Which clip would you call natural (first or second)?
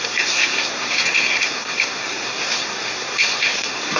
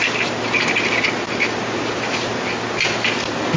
second